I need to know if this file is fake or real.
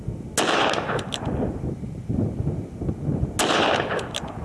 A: real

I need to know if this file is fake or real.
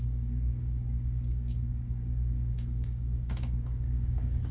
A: fake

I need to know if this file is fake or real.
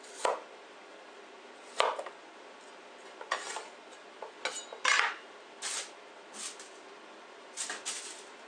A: real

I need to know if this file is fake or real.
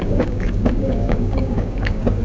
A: fake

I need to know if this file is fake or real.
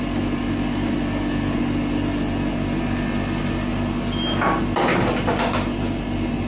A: real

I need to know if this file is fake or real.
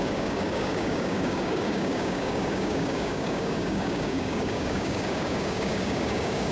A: fake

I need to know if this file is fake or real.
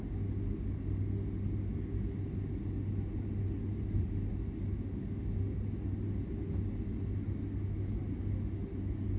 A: real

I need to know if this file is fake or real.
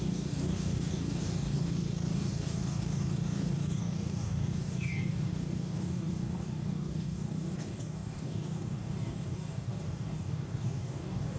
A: fake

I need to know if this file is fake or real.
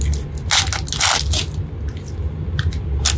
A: real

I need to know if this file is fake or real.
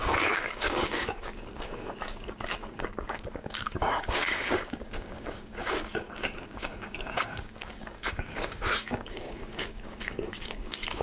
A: fake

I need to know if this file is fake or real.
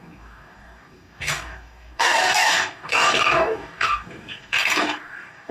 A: fake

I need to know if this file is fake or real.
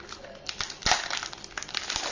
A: real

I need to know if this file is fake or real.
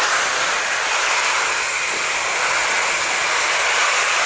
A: real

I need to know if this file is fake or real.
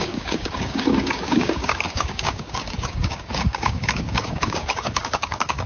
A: fake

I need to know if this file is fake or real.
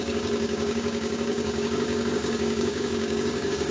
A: fake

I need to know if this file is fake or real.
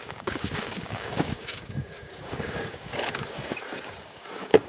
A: fake